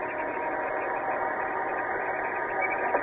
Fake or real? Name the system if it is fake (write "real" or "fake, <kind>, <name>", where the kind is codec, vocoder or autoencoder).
real